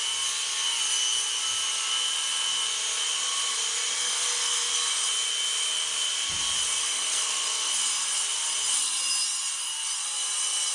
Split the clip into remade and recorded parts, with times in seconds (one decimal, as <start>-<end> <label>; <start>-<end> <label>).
0.0-4.0 recorded; 4.0-4.7 remade; 4.7-6.8 recorded; 6.8-7.7 remade; 7.7-10.7 recorded